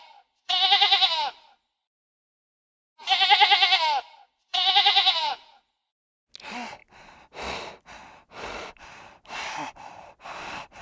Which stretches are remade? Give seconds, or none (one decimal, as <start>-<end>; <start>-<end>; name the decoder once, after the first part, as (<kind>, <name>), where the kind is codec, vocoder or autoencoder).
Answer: 4.5-6.1 (vocoder, Vocos)